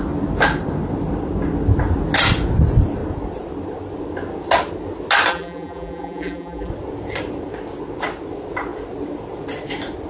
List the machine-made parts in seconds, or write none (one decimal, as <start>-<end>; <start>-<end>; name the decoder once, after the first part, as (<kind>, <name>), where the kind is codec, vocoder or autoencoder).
5.3-6.7 (vocoder, BigVGAN v2)